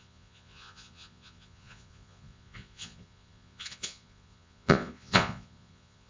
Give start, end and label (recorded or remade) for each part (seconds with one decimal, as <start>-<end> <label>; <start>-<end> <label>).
0.0-6.1 remade